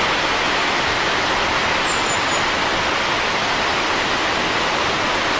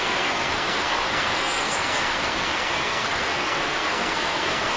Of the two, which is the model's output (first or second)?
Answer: second